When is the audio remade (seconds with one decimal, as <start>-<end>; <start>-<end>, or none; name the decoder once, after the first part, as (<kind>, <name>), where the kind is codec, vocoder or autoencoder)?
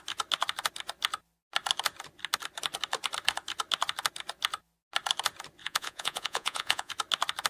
5.6-6.9 (vocoder, Vocos)